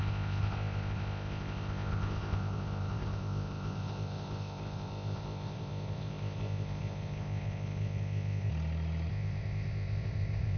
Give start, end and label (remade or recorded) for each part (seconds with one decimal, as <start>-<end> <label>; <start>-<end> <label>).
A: 0.0-8.5 remade; 8.5-9.1 recorded; 9.1-10.6 remade